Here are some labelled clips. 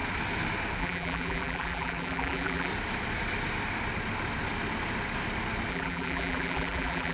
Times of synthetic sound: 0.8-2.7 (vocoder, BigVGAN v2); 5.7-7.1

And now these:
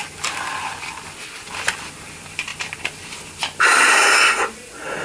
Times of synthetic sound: none

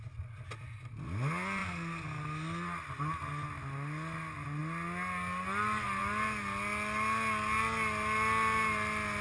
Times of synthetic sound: none